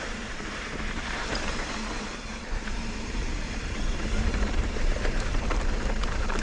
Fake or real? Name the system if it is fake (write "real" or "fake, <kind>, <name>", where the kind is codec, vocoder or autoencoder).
fake, vocoder, BigVGAN v2